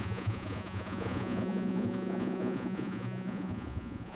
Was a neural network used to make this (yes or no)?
yes